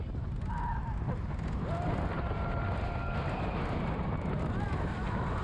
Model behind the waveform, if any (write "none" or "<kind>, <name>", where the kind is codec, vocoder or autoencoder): none